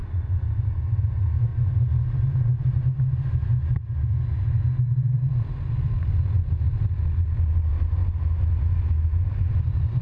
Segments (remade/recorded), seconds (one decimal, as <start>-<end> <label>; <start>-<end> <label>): 0.0-10.0 recorded